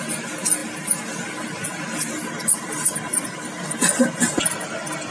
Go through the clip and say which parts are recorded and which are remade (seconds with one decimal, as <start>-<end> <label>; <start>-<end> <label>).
0.0-5.1 recorded